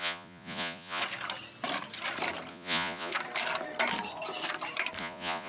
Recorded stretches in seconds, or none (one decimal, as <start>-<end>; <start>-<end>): 1.0-2.5; 3.1-5.0